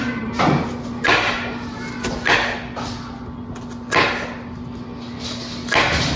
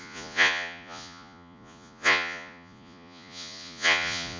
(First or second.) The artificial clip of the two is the second